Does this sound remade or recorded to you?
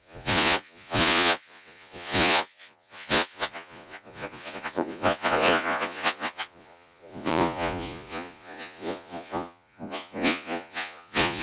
remade